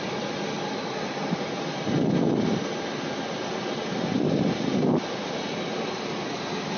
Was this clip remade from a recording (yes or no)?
no